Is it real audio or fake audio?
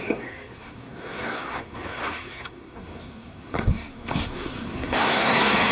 fake